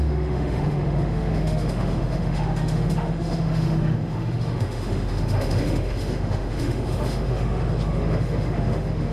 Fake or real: fake